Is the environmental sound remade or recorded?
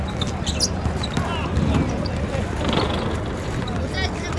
recorded